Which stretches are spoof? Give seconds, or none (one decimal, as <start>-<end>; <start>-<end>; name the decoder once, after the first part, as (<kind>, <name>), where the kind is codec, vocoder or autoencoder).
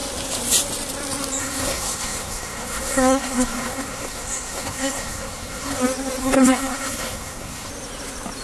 1.4-5.8 (codec, SNAC); 6.2-7.7